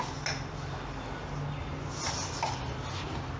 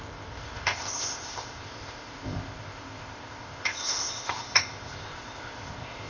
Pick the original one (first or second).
first